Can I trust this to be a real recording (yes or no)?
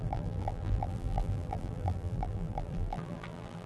no